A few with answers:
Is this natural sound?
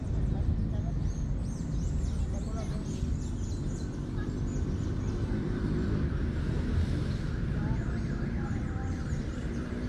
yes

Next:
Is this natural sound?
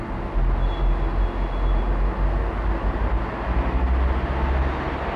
yes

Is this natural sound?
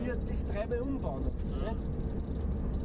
yes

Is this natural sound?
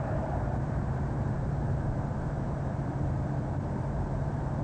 no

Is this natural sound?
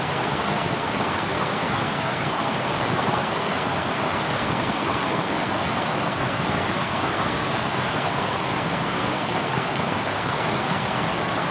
no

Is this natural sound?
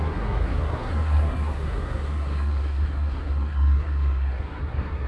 no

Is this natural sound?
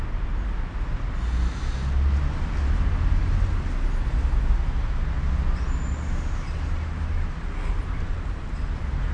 yes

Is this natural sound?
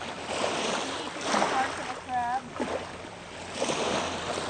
yes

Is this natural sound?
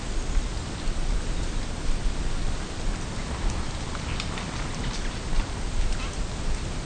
yes